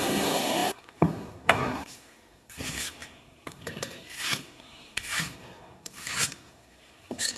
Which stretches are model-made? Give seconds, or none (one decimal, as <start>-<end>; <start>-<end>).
0.0-7.4